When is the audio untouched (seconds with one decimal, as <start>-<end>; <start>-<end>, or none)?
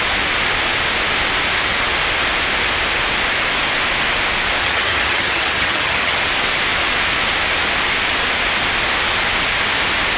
0.0-4.6; 6.2-10.2